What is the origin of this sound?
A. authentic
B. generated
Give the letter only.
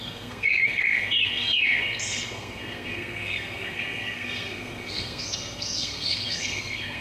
B